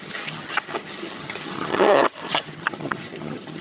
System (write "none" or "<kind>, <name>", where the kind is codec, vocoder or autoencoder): vocoder, HiFi-GAN